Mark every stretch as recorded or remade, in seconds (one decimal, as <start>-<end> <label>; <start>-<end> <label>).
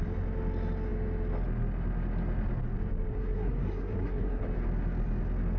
0.0-3.1 recorded; 3.1-4.4 remade; 4.4-5.6 recorded